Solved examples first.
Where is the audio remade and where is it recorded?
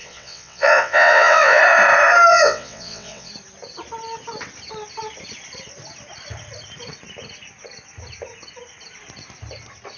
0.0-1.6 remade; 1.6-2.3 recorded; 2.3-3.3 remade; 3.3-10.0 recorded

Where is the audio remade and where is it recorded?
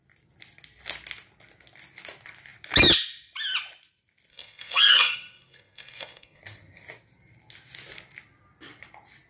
0.0-4.3 recorded; 4.3-6.4 remade; 6.4-9.3 recorded